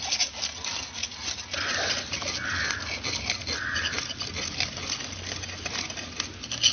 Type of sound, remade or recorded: recorded